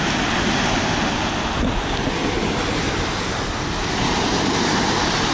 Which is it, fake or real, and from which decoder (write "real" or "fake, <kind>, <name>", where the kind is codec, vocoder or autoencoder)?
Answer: real